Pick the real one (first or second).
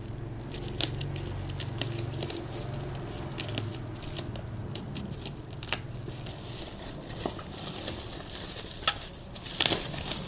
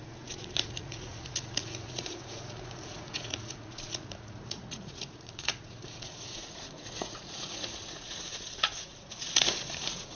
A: first